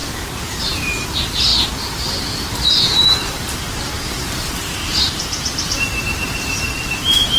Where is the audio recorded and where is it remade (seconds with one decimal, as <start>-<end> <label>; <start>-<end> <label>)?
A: 0.0-7.4 remade